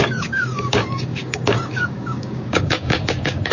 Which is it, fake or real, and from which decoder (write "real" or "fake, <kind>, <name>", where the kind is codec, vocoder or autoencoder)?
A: fake, codec, DAC